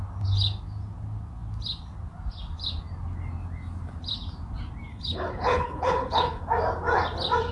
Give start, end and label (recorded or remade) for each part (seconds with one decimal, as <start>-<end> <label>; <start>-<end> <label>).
0.0-4.9 recorded; 4.9-6.4 remade; 6.4-7.5 recorded